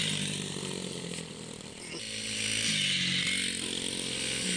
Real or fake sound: real